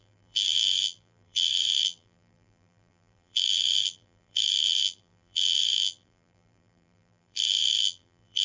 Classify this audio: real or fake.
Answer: fake